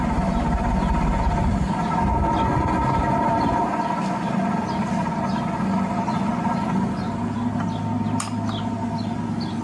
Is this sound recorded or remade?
recorded